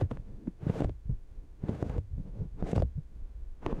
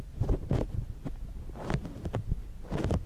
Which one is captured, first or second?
second